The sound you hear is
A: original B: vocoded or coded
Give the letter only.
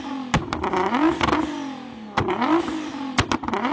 A